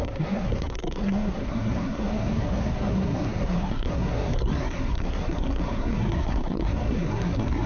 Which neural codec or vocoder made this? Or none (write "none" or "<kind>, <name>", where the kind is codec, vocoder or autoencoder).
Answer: codec, SNAC